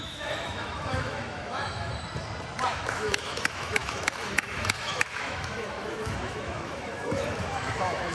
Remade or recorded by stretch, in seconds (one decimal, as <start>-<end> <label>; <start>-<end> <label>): 0.0-1.9 remade; 1.9-2.7 recorded; 2.7-8.1 remade